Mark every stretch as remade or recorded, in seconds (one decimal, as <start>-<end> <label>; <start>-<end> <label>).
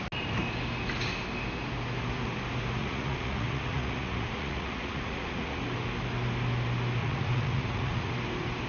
0.0-2.8 recorded; 2.8-5.6 remade; 5.6-7.0 recorded; 7.0-8.1 remade; 8.1-8.7 recorded